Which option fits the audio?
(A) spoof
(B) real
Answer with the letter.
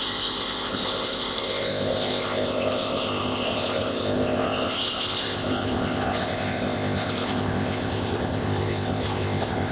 A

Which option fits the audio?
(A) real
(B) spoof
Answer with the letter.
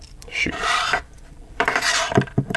B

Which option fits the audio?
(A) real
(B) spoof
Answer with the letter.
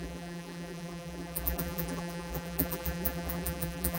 B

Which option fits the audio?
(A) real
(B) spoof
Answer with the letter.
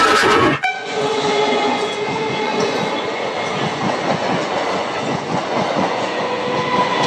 B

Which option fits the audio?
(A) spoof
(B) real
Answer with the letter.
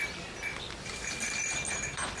B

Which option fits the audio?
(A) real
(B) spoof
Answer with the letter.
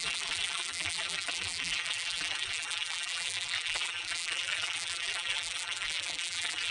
B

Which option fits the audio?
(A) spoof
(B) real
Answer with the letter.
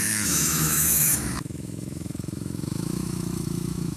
A